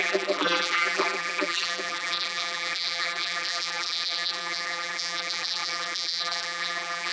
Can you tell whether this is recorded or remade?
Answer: remade